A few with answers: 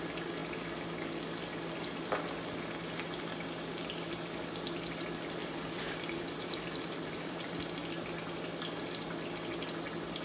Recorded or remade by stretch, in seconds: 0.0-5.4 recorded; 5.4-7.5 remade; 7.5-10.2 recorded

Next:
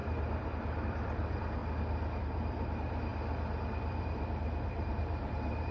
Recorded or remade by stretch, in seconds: 0.0-1.6 remade; 1.6-2.2 recorded; 2.2-3.1 remade; 3.1-3.8 recorded; 3.8-5.7 remade

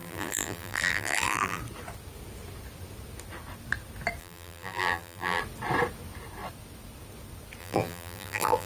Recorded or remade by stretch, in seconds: 0.0-1.6 remade; 1.6-4.2 recorded; 4.2-5.4 remade; 5.4-7.6 recorded; 7.6-8.7 remade

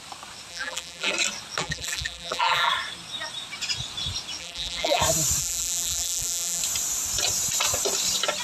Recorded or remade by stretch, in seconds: 0.0-0.5 recorded; 0.5-1.1 remade; 1.1-1.6 recorded; 1.6-2.7 remade; 2.7-4.4 recorded; 4.4-5.0 remade; 5.0-5.4 recorded; 5.4-6.6 remade; 6.6-8.4 recorded

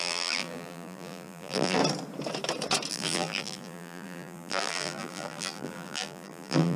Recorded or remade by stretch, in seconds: 0.0-1.8 remade; 1.8-2.9 recorded; 2.9-6.8 remade